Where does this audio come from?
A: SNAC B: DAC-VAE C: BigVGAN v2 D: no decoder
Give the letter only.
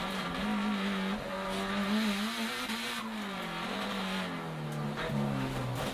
D